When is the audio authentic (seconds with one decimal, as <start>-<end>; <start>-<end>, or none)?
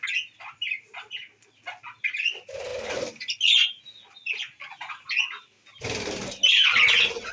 0.0-7.3